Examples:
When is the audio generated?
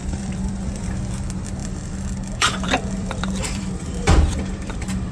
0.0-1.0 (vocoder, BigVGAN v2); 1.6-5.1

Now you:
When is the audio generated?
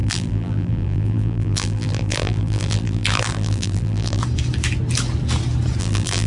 0.0-4.2 (vocoder, BigVGAN v2); 5.8-6.3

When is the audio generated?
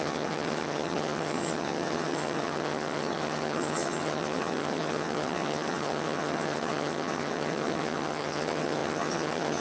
0.0-9.6 (vocoder, HiFi-GAN)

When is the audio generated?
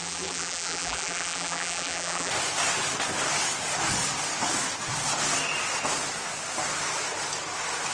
0.0-2.3 (vocoder, BigVGAN v2)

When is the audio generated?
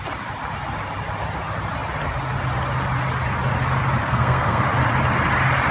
4.0-4.6 (codec, SNAC)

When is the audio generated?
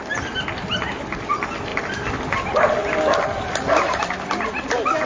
none